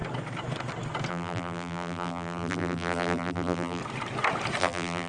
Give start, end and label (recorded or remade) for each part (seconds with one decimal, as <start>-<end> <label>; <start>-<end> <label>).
0.0-1.1 recorded; 1.1-3.8 remade; 3.8-4.6 recorded; 4.6-5.1 remade